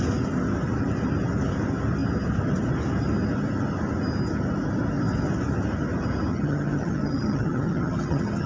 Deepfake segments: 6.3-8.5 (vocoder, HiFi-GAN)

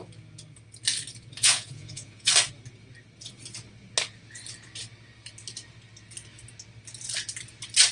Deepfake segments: 1.4-2.3 (vocoder, Vocos)

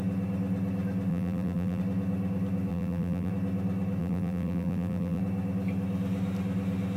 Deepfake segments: 1.1-1.8 (vocoder, BigVGAN v2); 2.7-3.3; 4.0-5.2

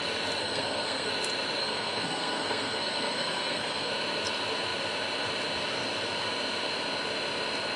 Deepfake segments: 0.4-1.1 (codec, SNAC); 1.6-3.9

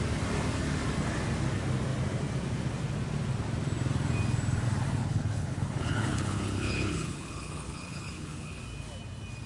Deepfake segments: 5.0-8.6 (codec, HILCodec)